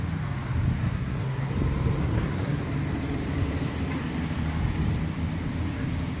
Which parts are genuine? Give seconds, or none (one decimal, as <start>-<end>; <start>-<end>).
0.0-0.8; 1.5-2.0; 2.6-6.2